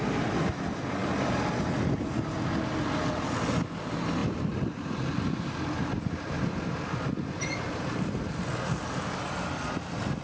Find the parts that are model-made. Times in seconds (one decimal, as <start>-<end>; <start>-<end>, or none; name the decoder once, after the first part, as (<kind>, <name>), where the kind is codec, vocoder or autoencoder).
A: 1.0-2.7 (vocoder, BigVGAN v2); 4.2-8.2